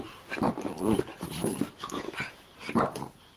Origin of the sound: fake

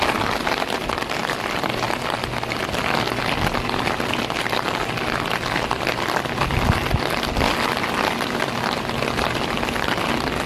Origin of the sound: real